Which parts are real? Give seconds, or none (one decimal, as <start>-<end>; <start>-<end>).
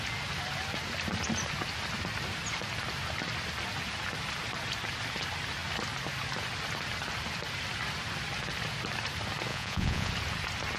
0.0-9.5; 10.1-10.8